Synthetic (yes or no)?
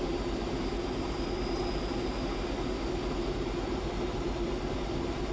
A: no